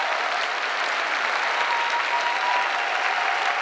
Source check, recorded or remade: recorded